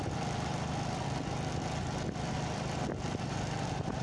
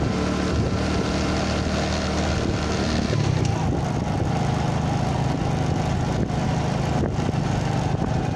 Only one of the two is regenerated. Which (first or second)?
first